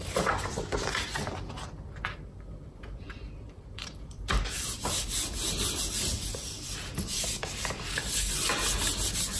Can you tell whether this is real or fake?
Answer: real